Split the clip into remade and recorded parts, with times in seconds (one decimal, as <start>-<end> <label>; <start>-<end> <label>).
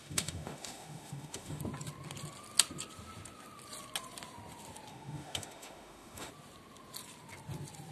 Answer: 0.0-1.6 remade; 1.6-4.9 recorded; 4.9-6.3 remade; 6.3-7.9 recorded